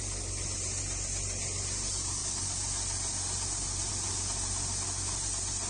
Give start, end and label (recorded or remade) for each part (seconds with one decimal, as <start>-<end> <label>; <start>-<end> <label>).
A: 0.0-5.7 recorded